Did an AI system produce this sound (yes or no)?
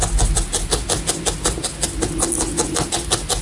no